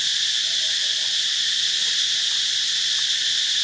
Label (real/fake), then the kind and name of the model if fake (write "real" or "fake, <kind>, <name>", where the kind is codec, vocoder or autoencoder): real